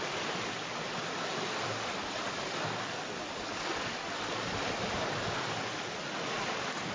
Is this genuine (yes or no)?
yes